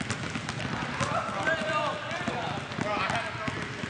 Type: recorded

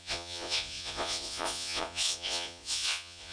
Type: remade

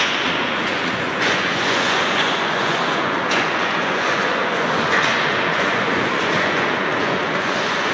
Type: remade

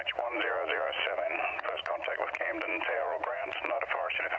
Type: remade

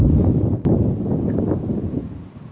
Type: recorded